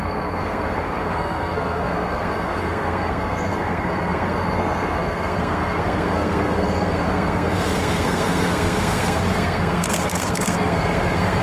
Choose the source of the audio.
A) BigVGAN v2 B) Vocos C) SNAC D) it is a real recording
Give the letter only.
C